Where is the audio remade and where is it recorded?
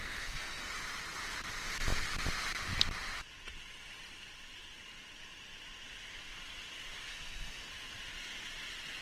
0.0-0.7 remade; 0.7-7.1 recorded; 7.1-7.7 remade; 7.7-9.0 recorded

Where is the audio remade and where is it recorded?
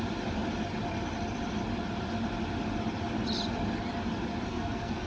0.0-4.5 recorded; 4.5-5.1 remade